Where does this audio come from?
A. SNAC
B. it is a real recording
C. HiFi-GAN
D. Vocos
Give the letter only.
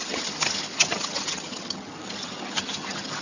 C